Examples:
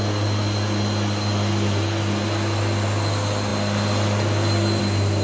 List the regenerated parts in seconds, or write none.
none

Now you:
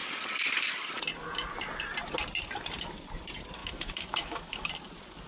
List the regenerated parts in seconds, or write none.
3.6-4.7 (autoencoder, DAC-VAE)

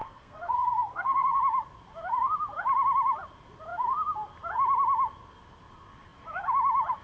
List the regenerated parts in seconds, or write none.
0.0-1.4 (codec, SNAC)

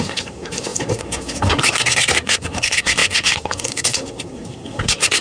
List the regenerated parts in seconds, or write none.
0.0-5.2 (codec, SNAC)

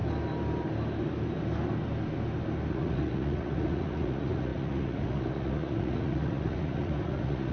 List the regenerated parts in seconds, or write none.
2.7-7.5 (vocoder, Vocos)

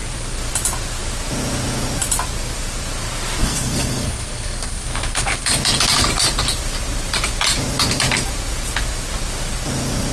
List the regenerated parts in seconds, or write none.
3.4-5.4 (codec, SNAC)

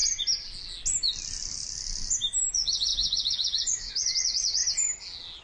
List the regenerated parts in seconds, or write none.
2.5-4.6 (vocoder, Vocos)